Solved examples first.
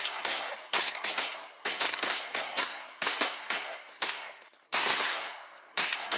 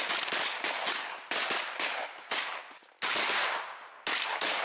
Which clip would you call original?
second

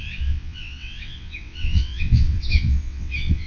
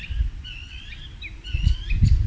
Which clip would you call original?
second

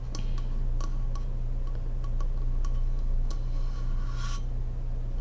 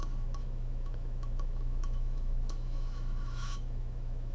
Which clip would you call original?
first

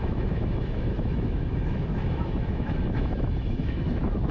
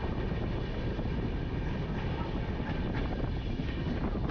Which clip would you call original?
second